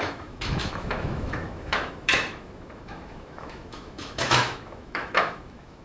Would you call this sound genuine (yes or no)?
no